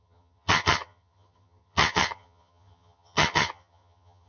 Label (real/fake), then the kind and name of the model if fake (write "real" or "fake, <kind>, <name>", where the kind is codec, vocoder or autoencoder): fake, vocoder, HiFi-GAN